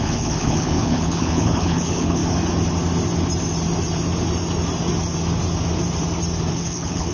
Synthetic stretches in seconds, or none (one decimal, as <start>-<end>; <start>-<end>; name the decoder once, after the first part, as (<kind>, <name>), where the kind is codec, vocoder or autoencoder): 0.0-2.2 (codec, HILCodec); 6.5-7.1